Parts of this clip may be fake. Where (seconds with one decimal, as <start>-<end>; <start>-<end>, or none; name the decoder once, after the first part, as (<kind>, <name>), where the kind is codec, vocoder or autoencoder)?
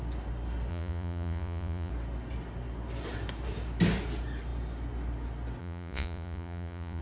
0.7-1.9 (vocoder, Vocos); 5.6-7.0